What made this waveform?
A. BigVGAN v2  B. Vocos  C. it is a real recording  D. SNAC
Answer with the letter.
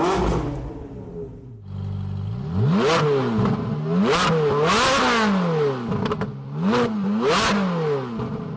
C